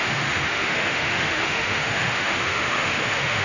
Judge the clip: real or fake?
fake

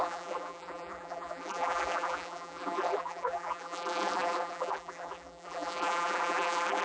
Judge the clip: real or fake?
fake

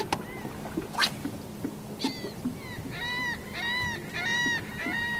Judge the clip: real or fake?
real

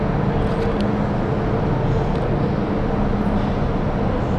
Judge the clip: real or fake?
real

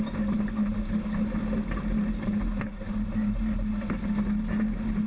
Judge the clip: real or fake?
real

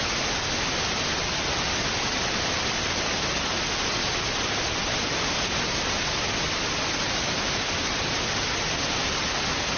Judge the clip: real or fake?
real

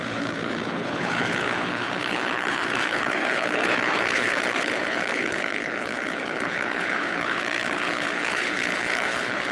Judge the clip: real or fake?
fake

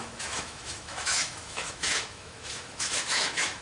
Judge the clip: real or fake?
fake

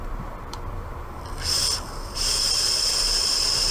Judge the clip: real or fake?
fake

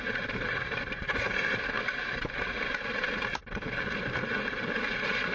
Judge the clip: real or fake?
fake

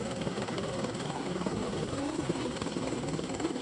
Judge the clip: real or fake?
fake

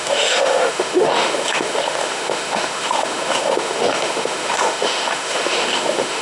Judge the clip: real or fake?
fake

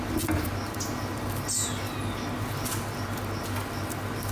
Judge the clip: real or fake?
real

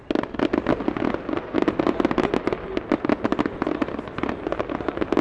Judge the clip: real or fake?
real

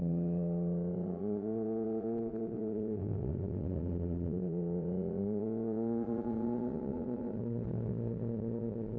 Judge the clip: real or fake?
fake